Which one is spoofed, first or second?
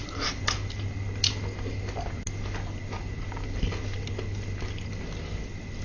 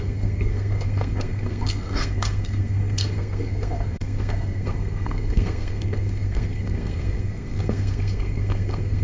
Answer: second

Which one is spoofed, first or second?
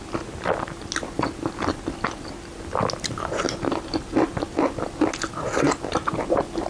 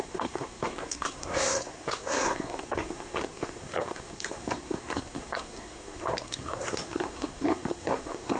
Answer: second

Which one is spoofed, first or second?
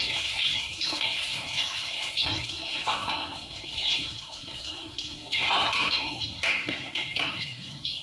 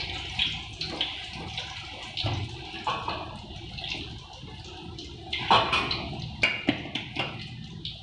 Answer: first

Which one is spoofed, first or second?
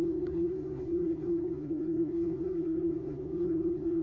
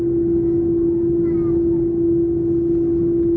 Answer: first